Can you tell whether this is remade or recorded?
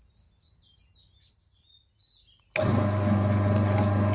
recorded